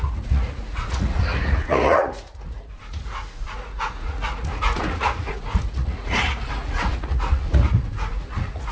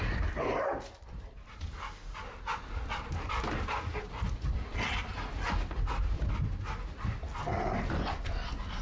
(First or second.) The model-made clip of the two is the first